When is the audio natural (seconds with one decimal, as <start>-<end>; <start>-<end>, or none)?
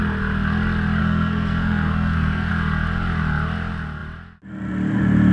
0.0-1.0; 2.5-5.3